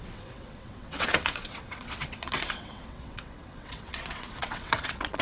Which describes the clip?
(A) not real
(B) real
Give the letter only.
A